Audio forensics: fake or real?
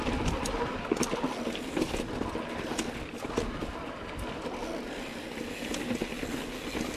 real